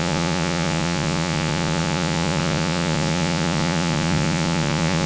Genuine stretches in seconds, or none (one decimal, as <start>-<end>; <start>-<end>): none